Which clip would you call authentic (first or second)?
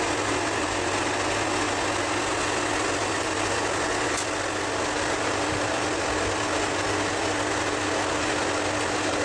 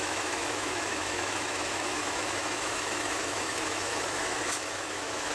first